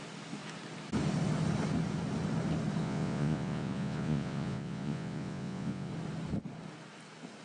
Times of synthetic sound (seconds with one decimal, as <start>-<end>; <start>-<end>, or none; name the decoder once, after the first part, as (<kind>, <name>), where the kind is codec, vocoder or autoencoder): 2.8-5.9 (vocoder, Vocos)